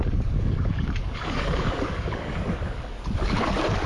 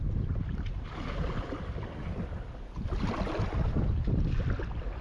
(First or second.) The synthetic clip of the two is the first